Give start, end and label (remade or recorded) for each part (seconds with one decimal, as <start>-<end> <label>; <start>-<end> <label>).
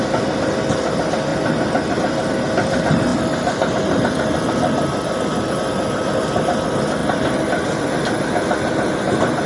0.0-1.3 recorded; 1.3-2.2 remade; 2.2-3.1 recorded; 3.1-6.4 remade; 6.4-7.0 recorded; 7.0-7.9 remade; 7.9-9.5 recorded